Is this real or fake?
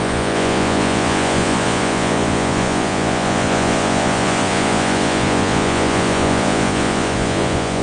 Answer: fake